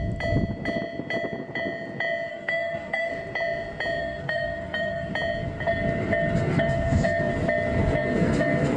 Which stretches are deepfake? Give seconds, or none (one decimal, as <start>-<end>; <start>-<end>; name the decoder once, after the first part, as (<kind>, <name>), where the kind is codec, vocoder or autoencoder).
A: 2.3-3.1 (codec, SNAC); 4.0-5.1; 6.4-7.3; 7.8-8.8